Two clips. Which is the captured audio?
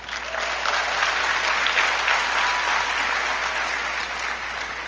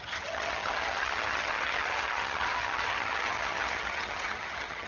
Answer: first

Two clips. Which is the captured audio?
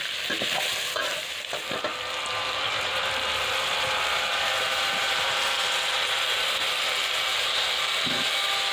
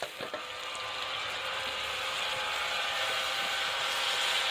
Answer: second